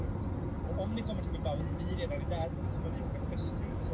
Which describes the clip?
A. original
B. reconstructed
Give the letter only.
A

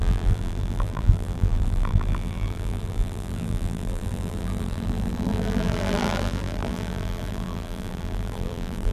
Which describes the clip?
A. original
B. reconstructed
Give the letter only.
B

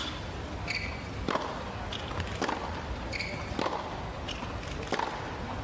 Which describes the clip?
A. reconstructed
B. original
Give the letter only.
B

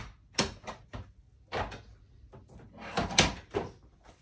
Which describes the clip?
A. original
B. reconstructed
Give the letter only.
A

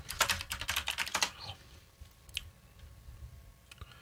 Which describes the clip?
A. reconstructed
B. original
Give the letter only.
B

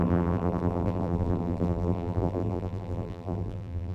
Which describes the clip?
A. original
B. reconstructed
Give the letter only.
B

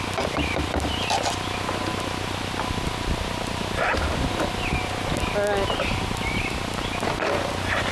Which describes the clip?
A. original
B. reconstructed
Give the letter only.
A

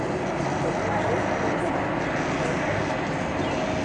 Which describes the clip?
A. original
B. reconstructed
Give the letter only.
A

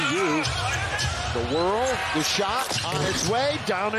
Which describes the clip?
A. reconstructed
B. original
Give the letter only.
B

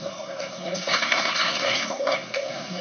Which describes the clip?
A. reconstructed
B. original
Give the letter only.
A